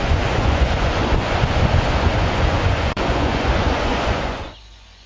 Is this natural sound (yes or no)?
no